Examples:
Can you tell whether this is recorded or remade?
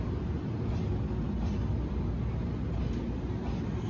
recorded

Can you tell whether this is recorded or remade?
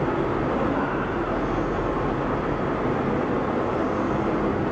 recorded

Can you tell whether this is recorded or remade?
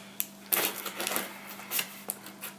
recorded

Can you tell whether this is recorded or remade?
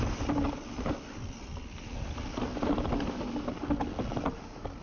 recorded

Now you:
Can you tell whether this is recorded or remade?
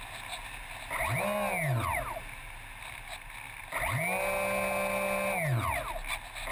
recorded